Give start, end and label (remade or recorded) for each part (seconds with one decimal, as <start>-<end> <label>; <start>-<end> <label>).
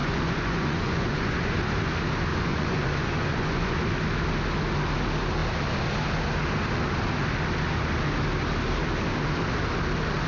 0.0-1.6 remade; 1.6-2.3 recorded; 2.3-3.8 remade; 3.8-10.3 recorded